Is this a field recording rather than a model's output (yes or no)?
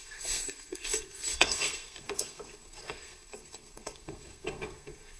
no